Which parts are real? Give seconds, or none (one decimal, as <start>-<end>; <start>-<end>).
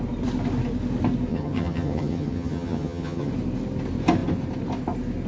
0.0-1.3; 3.3-5.3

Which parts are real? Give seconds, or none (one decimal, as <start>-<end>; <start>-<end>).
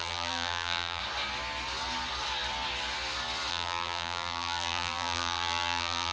1.0-3.5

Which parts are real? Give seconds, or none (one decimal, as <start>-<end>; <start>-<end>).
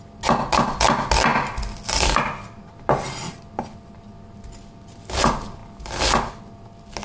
0.0-7.0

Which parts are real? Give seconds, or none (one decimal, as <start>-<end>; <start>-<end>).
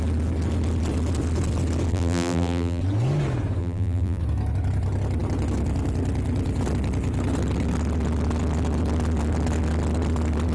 0.0-1.9; 2.8-3.6; 4.2-10.5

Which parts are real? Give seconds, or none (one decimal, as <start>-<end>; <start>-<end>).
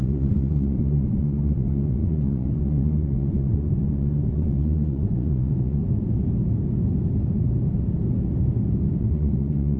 5.8-9.0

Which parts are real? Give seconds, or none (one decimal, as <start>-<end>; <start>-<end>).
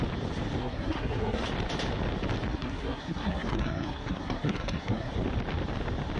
0.0-0.6; 1.4-2.5; 5.1-6.2